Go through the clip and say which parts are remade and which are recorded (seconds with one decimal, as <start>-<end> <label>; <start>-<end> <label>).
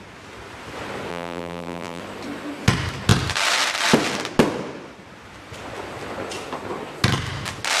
0.0-1.1 recorded; 1.1-2.0 remade; 2.0-7.8 recorded